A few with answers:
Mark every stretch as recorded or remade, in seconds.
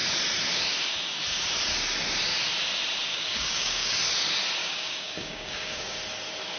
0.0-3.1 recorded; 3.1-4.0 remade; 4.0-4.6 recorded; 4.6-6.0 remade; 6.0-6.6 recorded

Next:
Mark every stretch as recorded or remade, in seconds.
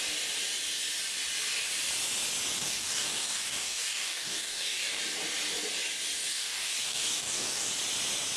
0.0-2.6 recorded; 2.6-5.0 remade; 5.0-6.3 recorded; 6.3-7.7 remade; 7.7-8.4 recorded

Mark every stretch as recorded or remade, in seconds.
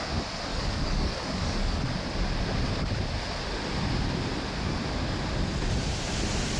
0.0-0.5 recorded; 0.5-1.8 remade; 1.8-6.6 recorded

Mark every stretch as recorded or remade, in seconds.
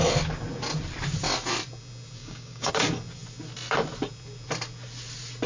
0.0-2.2 recorded; 2.2-2.7 remade; 2.7-5.5 recorded